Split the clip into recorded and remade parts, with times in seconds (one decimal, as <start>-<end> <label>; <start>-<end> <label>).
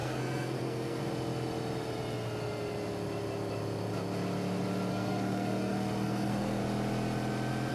0.0-1.0 remade; 1.0-4.9 recorded; 4.9-6.6 remade; 6.6-7.7 recorded